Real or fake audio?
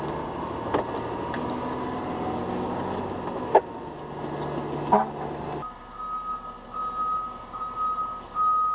real